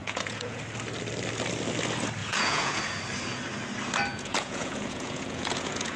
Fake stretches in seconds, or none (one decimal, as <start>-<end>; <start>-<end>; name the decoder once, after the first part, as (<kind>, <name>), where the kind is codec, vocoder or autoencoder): 0.0-0.6 (vocoder, Vocos); 2.2-2.8; 4.1-6.0